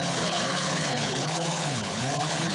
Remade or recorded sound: remade